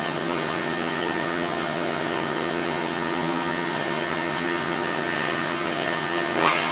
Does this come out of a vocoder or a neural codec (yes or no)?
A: yes